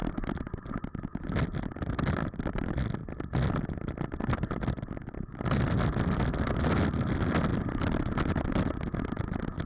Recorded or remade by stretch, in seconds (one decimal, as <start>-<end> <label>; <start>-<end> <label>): 0.0-9.7 recorded